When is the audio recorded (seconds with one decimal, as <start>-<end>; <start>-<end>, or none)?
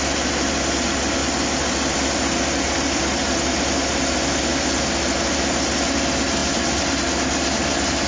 0.0-8.1